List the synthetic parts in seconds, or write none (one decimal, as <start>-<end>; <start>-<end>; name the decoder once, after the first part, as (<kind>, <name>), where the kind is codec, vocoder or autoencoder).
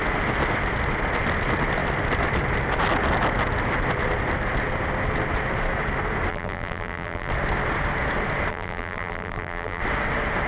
6.3-7.3 (vocoder, BigVGAN v2); 8.5-9.8